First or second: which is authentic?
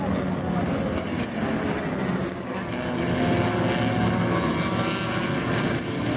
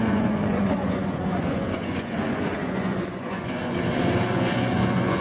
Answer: first